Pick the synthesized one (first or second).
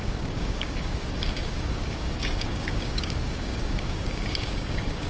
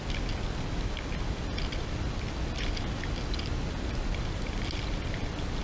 first